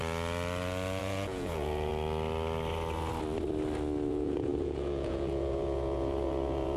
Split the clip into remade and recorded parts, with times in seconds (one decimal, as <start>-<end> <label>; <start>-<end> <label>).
0.0-1.0 recorded; 1.0-1.9 remade; 1.9-4.1 recorded; 4.1-6.8 remade